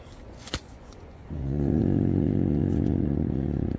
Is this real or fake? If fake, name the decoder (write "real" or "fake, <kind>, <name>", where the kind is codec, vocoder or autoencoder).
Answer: fake, vocoder, Vocos